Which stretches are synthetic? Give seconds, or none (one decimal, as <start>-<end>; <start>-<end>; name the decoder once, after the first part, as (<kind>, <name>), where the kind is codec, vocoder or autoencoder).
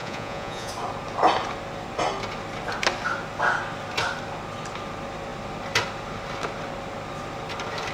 0.0-0.7 (vocoder, Vocos)